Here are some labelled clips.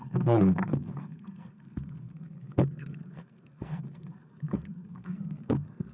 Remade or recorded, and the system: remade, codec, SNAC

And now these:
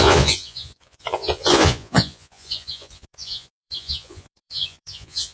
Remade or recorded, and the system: remade, vocoder, Vocos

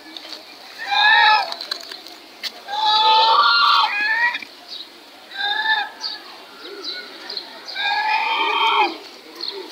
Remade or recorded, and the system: recorded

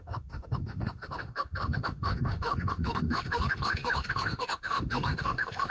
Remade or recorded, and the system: remade, autoencoder, DAC-VAE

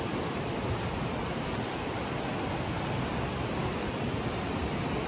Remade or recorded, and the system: recorded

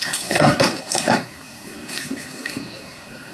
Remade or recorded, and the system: remade, codec, SNAC